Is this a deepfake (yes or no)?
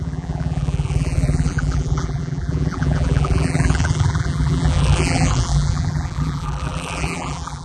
yes